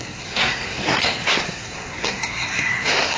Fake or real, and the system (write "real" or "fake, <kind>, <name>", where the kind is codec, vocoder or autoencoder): fake, codec, SNAC